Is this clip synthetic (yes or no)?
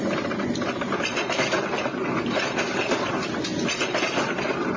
no